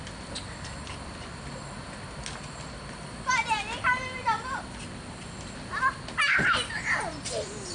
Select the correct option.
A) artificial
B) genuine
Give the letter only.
B